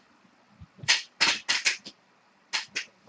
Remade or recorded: recorded